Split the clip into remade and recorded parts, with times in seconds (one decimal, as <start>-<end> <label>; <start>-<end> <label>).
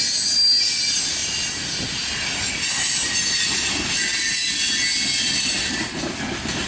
0.0-6.7 recorded